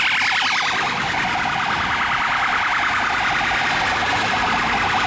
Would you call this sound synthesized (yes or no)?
no